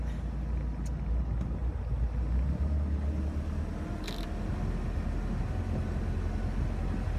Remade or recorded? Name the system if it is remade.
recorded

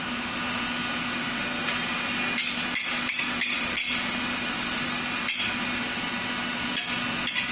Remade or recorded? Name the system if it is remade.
recorded